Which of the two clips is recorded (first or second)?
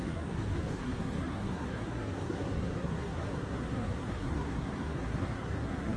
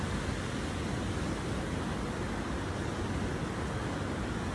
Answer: second